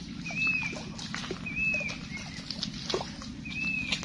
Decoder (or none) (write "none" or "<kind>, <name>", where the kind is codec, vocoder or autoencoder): none